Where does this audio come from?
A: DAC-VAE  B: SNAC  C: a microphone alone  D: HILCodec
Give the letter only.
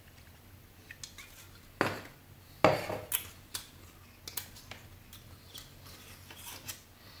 C